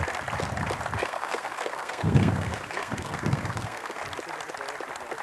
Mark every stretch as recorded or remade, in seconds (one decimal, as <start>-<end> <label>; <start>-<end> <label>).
0.0-1.0 recorded; 1.0-4.0 remade; 4.0-5.2 recorded